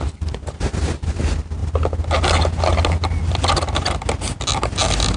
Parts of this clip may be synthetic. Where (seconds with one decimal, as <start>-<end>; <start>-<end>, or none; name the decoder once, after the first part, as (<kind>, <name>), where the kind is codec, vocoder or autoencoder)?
none